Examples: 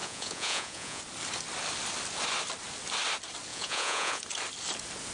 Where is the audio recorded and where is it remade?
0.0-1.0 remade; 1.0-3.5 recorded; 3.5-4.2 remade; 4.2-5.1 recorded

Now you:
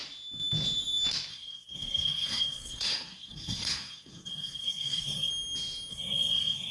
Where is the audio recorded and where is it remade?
0.0-1.3 recorded; 1.3-5.3 remade; 5.3-5.9 recorded; 5.9-6.7 remade

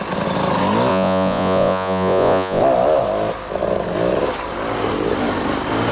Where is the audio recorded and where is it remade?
0.0-0.9 recorded; 0.9-2.6 remade; 2.6-5.9 recorded

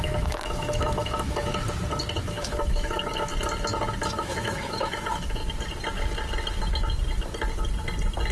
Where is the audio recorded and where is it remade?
0.0-1.5 remade; 1.5-2.2 recorded; 2.2-3.3 remade; 3.3-4.2 recorded; 4.2-5.4 remade; 5.4-8.3 recorded

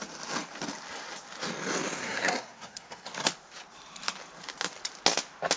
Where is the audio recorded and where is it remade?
0.0-2.0 recorded; 2.0-3.1 remade; 3.1-5.6 recorded

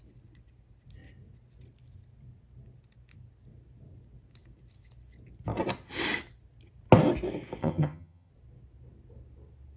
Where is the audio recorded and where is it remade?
0.0-7.6 recorded; 7.6-8.3 remade; 8.3-9.8 recorded